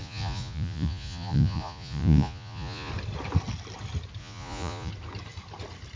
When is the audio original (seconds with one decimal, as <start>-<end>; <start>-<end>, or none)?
2.9-4.2; 4.9-6.0